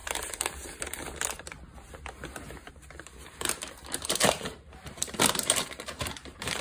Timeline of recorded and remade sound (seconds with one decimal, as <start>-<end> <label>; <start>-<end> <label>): 0.0-2.7 recorded; 2.7-6.6 remade